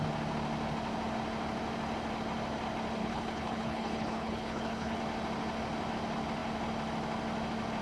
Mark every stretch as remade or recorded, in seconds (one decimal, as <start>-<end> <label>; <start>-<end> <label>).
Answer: 0.0-3.0 recorded; 3.0-5.0 remade; 5.0-7.8 recorded